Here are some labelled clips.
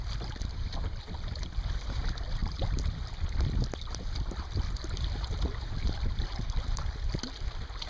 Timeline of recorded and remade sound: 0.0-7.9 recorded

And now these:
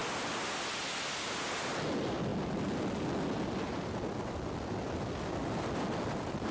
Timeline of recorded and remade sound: 0.0-6.5 recorded

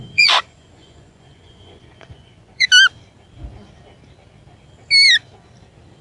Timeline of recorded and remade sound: 0.0-2.7 remade; 2.7-6.0 recorded

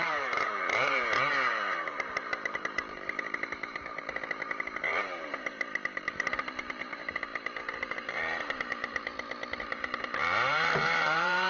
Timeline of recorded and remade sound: 0.0-7.3 remade; 7.3-7.8 recorded; 7.8-9.1 remade; 9.1-9.6 recorded; 9.6-11.5 remade